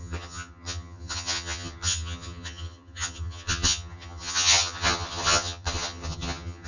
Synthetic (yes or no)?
yes